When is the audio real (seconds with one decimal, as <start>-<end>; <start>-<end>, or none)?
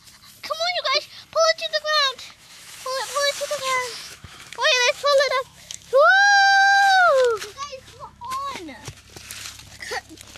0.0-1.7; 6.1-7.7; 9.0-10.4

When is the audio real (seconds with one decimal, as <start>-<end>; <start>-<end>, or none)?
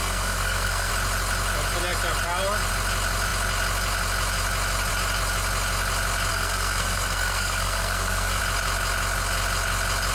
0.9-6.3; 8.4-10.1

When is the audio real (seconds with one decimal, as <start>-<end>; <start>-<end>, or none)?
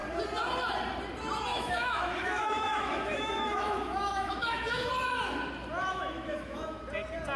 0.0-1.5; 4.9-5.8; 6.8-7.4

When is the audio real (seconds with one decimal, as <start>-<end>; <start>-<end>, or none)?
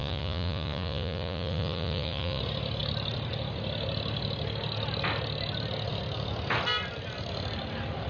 2.4-8.1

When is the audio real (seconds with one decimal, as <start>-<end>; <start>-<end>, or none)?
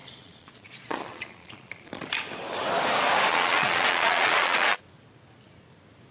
1.9-3.3; 4.8-6.1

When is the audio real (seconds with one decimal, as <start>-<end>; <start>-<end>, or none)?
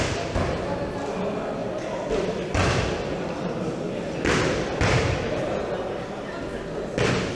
0.0-1.6; 6.0-7.3